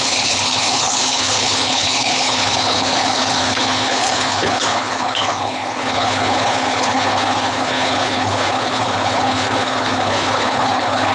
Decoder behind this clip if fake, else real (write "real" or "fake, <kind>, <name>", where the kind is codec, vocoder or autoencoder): fake, codec, HILCodec